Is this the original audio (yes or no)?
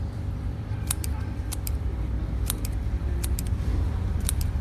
no